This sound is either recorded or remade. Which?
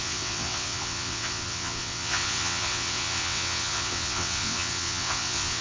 remade